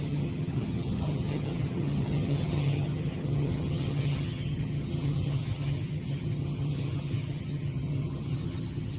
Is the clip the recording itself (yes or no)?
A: no